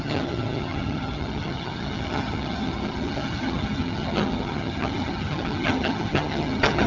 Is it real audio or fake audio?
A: fake